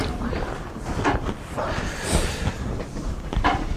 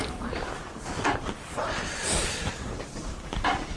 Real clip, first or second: first